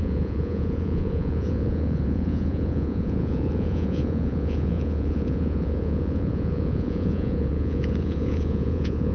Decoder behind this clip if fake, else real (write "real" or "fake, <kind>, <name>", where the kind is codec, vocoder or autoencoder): fake, vocoder, Vocos